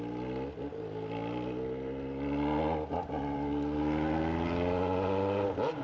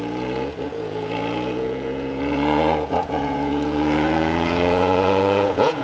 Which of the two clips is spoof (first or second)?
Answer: second